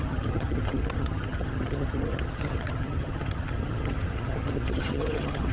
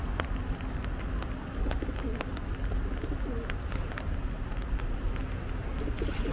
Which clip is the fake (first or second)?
first